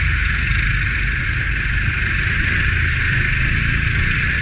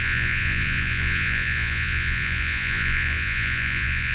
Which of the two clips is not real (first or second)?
second